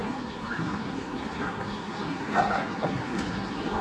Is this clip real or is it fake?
fake